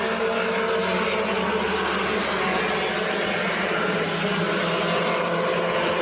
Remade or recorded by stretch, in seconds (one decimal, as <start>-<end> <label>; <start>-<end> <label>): 0.0-6.0 recorded